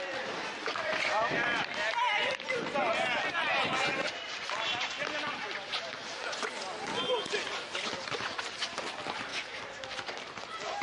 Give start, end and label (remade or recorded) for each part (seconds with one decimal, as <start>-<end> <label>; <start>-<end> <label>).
0.0-9.3 recorded; 9.3-10.3 remade; 10.3-10.8 recorded